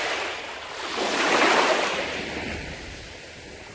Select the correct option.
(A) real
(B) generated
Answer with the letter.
A